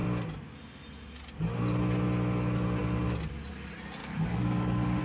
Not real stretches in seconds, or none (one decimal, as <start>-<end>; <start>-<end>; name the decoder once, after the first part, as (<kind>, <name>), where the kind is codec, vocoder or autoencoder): 4.0-5.0 (codec, DAC)